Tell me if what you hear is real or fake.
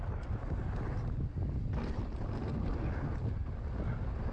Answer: real